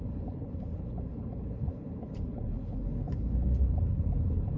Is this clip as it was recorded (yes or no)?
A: no